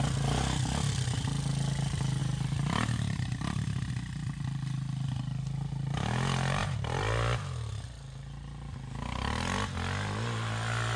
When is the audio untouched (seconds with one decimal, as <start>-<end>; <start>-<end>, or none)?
0.0-2.2; 3.9-11.0